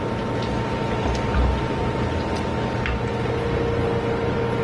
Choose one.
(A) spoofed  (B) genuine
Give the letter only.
B